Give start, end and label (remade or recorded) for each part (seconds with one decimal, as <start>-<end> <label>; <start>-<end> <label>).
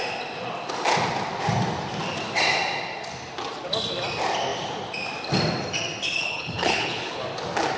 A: 0.0-6.2 recorded; 6.2-7.2 remade; 7.2-7.8 recorded